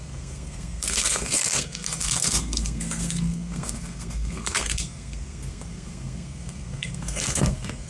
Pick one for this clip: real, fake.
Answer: fake